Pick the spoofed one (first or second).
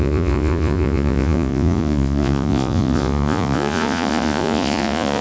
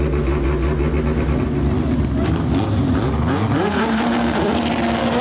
first